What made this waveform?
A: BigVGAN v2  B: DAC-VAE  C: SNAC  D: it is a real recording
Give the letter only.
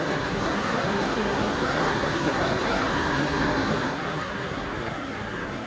C